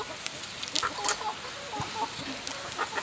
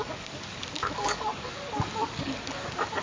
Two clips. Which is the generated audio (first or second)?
second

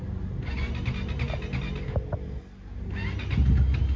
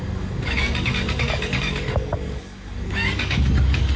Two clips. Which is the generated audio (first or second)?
second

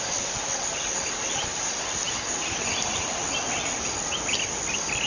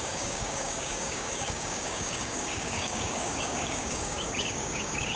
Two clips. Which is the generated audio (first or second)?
second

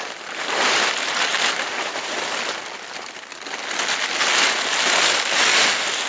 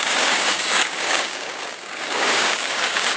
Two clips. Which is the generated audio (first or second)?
second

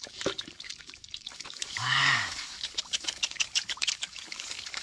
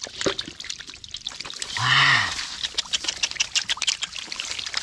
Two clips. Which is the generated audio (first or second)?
first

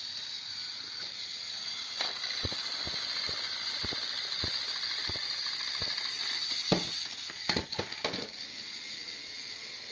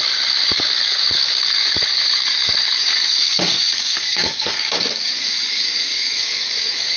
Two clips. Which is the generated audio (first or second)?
second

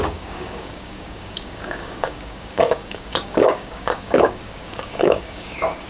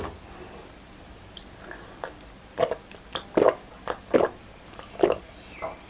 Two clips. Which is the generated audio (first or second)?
first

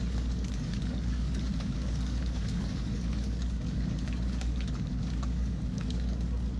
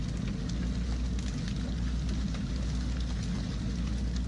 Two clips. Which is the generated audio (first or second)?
first